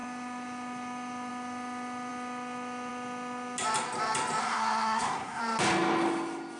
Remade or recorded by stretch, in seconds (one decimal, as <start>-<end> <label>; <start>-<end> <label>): 0.0-4.4 recorded; 4.4-5.4 remade; 5.4-6.6 recorded